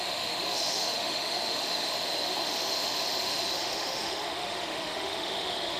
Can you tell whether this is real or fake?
fake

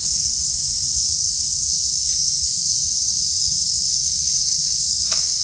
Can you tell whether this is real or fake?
fake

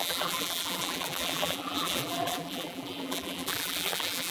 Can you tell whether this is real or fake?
fake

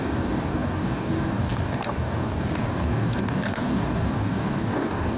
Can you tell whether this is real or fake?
fake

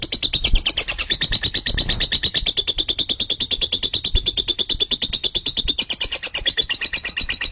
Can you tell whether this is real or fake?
real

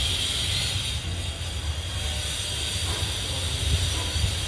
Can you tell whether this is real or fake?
real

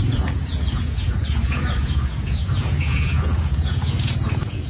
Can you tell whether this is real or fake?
fake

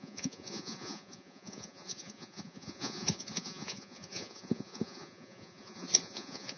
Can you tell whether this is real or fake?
fake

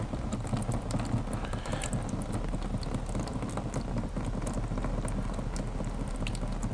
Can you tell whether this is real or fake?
real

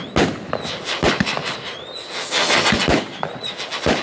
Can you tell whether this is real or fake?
real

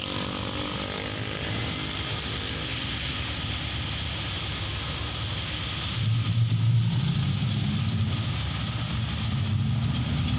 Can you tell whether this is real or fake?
real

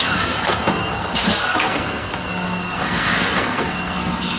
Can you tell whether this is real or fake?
fake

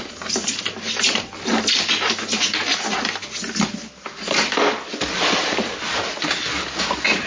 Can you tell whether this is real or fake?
real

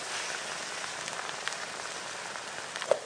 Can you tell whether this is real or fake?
real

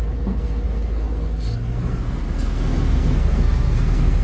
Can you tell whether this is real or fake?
fake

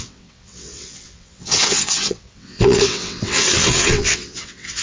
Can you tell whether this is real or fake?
fake